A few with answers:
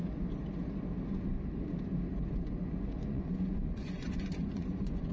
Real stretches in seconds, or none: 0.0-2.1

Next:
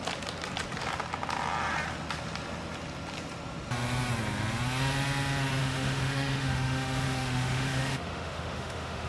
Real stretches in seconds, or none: 0.0-5.6

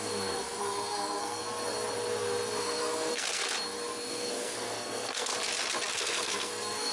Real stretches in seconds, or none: 1.4-2.6; 3.4-4.1; 5.3-5.9

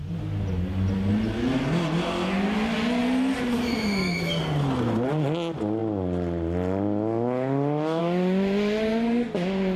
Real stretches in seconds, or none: 0.0-9.8

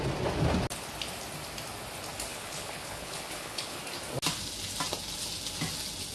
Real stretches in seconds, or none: 0.0-2.3; 3.8-6.1